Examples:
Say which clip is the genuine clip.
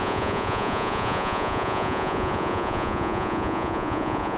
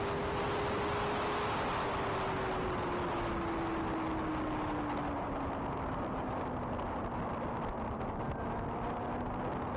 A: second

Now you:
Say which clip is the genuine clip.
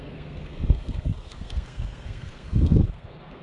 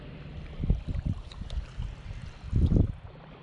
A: second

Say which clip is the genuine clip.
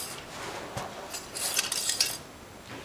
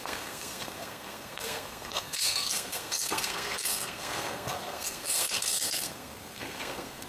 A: first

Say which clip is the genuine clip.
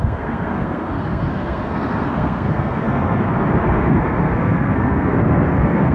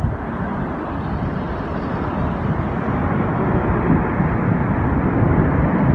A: second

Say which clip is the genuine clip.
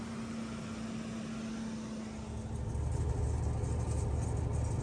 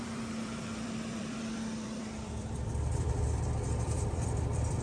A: first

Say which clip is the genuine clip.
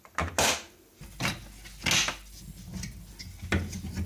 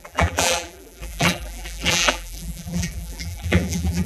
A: first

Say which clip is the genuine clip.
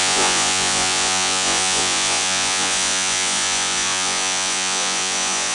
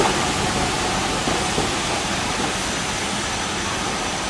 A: second